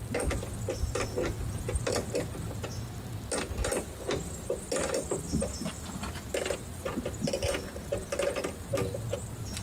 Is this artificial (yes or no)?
no